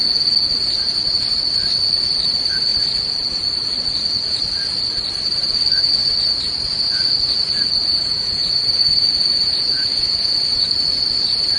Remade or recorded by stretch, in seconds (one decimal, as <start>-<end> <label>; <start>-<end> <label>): 0.0-7.8 recorded; 7.8-10.7 remade; 10.7-11.6 recorded